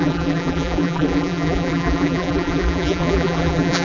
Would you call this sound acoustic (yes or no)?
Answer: no